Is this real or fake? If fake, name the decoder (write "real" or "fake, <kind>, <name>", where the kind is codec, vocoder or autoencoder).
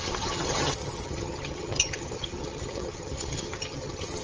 fake, vocoder, HiFi-GAN